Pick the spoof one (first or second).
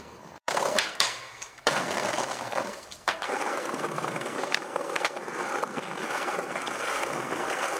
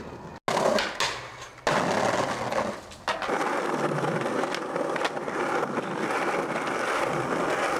first